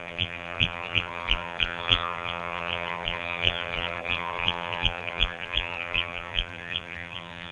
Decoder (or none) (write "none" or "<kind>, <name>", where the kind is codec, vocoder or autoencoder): vocoder, BigVGAN v2